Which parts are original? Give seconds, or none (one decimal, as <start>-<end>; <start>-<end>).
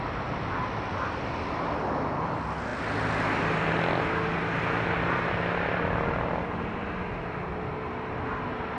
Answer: 0.0-8.8